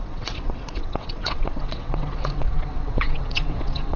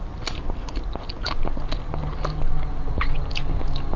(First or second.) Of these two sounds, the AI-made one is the first